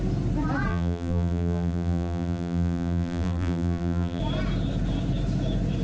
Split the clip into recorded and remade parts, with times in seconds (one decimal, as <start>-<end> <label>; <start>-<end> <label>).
0.0-0.7 recorded; 0.7-4.2 remade; 4.2-5.8 recorded